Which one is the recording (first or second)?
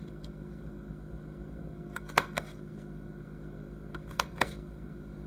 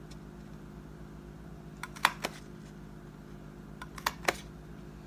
second